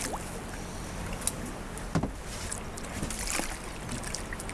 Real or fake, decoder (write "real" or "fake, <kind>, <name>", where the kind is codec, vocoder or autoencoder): real